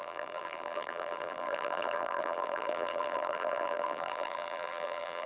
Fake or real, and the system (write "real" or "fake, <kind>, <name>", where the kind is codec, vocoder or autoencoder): fake, vocoder, BigVGAN v2